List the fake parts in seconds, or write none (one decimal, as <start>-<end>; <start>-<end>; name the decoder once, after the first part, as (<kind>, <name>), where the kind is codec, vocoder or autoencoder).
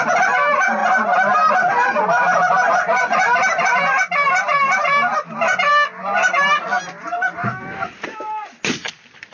0.0-0.8 (vocoder, BigVGAN v2); 1.5-5.7; 8.9-9.3